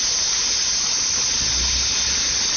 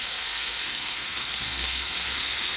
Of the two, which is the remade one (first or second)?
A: second